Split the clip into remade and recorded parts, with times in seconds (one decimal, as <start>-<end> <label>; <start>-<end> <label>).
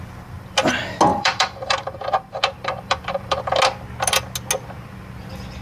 0.0-1.1 recorded; 1.1-3.4 remade; 3.4-5.6 recorded